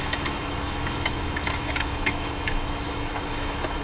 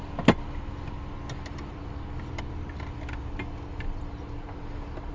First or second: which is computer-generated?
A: first